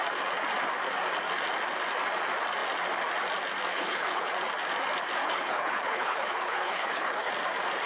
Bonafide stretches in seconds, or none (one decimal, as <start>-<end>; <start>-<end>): 0.0-3.7; 4.3-5.2; 7.3-7.9